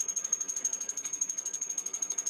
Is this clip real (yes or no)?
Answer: no